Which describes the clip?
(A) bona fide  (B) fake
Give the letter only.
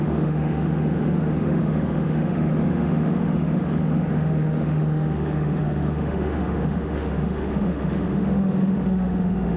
B